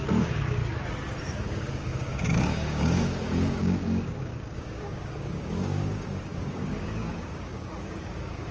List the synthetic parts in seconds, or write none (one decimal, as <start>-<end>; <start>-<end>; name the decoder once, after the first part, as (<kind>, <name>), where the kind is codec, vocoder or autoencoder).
0.0-0.6 (codec, DAC); 1.2-8.5